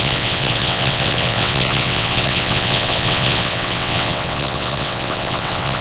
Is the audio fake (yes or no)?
yes